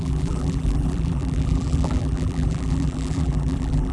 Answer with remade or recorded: remade